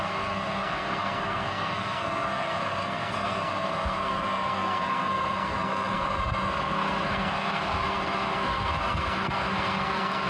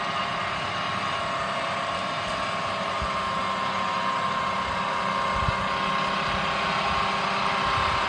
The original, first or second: second